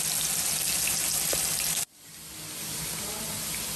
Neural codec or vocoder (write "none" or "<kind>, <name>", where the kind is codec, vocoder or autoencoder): none